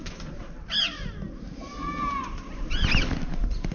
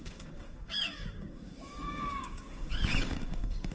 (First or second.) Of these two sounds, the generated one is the second